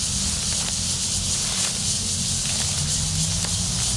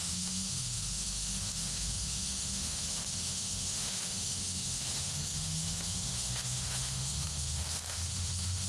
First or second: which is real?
first